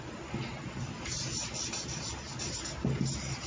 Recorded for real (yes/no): yes